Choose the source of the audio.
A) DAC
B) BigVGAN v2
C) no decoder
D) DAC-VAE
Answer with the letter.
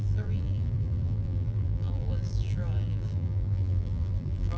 B